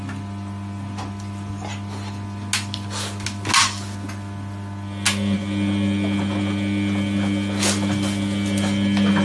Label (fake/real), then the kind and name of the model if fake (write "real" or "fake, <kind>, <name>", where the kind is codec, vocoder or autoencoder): real